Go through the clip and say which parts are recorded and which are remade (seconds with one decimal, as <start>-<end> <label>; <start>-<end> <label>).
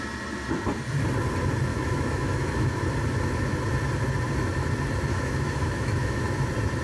0.0-1.7 recorded; 1.7-2.8 remade; 2.8-5.1 recorded; 5.1-6.2 remade; 6.2-6.8 recorded